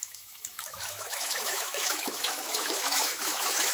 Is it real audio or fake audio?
fake